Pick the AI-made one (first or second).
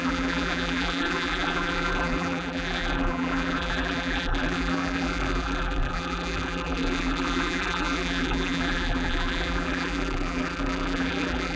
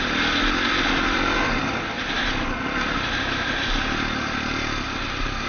first